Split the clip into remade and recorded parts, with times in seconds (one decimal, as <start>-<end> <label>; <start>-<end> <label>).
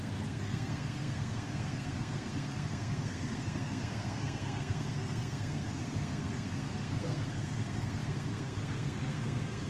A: 0.0-9.7 remade